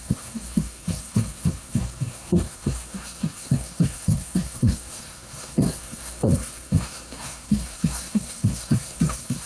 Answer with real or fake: fake